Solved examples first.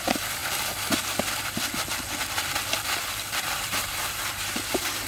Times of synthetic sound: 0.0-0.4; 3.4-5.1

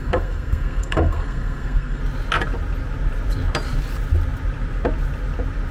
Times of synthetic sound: 0.0-2.0

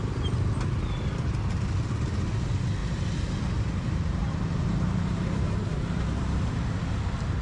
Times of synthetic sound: 2.8-3.5; 4.2-6.5

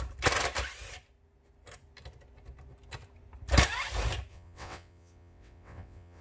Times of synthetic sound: 4.3-6.2